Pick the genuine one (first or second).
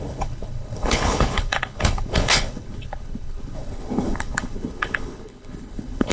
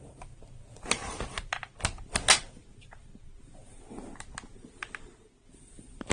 second